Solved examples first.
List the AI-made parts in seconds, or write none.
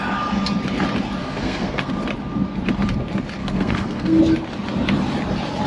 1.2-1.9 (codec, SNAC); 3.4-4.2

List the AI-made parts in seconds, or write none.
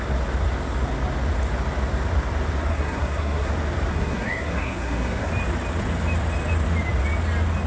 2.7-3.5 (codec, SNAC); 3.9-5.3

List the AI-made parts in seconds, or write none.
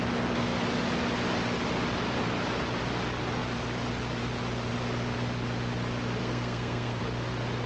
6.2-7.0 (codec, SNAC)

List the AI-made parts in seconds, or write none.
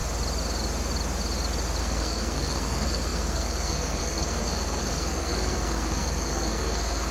1.8-7.1 (codec, SNAC)